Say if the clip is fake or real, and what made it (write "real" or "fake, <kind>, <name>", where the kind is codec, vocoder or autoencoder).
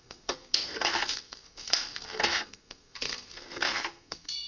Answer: fake, codec, SNAC